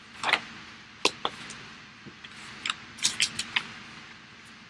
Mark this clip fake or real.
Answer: real